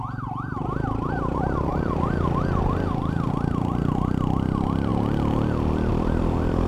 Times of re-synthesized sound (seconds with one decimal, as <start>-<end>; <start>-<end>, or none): none